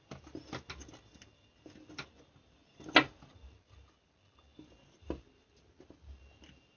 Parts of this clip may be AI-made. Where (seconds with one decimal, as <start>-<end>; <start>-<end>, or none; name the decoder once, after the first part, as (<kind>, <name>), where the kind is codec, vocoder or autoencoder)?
none